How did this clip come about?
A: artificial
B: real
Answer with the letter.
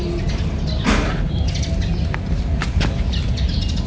B